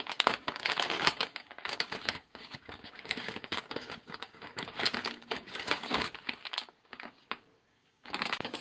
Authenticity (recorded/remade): remade